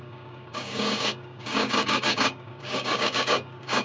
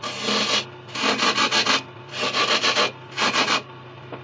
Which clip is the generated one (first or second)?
first